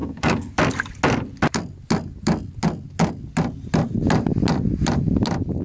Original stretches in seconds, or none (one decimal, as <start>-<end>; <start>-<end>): 0.5-5.6